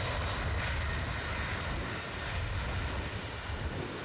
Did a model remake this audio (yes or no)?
no